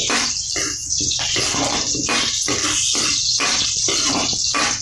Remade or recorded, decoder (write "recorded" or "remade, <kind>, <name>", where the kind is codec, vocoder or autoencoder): recorded